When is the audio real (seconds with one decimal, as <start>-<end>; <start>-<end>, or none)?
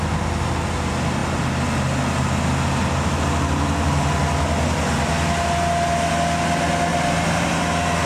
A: 0.0-6.9; 7.5-8.1